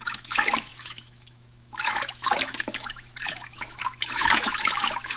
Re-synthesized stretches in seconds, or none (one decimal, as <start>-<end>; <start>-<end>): 0.0-5.2